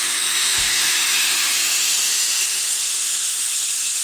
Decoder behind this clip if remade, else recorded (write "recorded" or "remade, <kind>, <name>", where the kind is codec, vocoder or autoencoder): remade, autoencoder, DAC-VAE